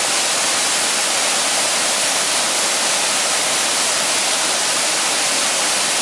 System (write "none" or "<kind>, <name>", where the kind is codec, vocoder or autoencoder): none